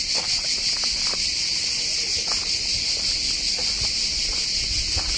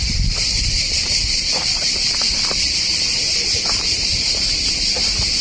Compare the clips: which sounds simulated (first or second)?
second